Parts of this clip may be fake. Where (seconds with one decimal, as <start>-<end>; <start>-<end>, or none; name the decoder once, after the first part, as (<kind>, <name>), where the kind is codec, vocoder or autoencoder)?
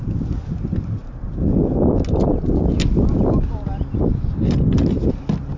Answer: none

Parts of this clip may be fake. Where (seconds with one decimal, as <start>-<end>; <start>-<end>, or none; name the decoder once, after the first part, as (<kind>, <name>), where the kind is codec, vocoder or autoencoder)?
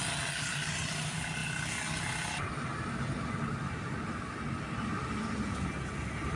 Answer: none